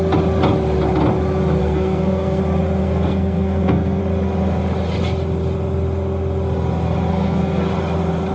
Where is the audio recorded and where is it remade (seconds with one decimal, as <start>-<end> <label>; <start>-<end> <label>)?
0.0-1.6 recorded; 1.6-2.4 remade; 2.4-2.8 recorded; 2.8-4.0 remade; 4.0-7.1 recorded; 7.1-7.6 remade; 7.6-8.3 recorded